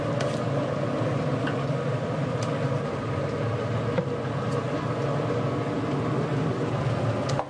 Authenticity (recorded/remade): recorded